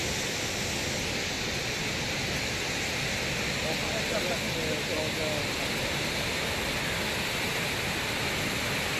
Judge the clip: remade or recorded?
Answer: recorded